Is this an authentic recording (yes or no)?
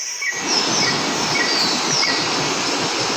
yes